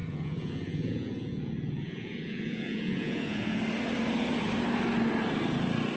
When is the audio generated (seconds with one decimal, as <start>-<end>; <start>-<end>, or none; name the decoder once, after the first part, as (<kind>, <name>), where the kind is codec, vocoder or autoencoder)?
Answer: 0.0-3.6 (vocoder, Vocos)